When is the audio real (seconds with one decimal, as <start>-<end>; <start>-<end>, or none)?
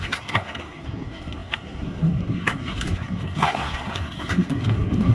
none